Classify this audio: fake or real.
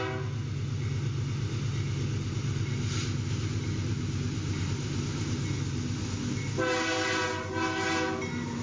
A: real